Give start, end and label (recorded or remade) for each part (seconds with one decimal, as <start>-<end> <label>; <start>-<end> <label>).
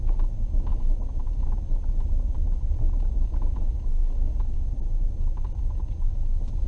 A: 0.0-6.7 recorded